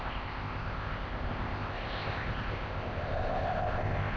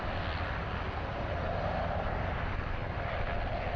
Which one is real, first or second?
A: second